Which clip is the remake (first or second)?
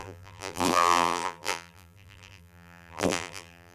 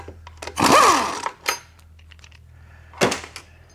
first